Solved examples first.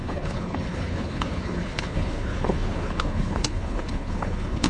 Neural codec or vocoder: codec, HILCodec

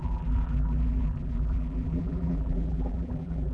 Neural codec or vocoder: vocoder, BigVGAN v2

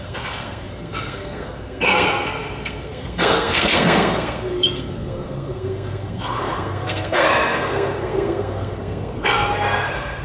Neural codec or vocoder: codec, SNAC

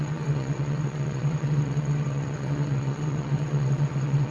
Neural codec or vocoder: vocoder, WaveNeXt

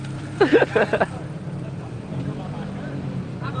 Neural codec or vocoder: vocoder, BigVGAN v2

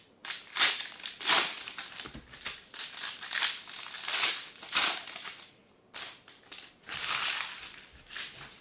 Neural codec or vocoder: none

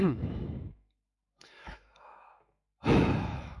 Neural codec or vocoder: autoencoder, DAC-VAE